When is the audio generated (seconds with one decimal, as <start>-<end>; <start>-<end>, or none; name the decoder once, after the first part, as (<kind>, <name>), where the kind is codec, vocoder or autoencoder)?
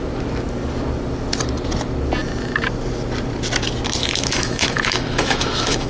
4.0-5.9 (autoencoder, DAC-VAE)